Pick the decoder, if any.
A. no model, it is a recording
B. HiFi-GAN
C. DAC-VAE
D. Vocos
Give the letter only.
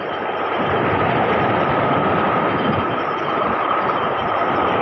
A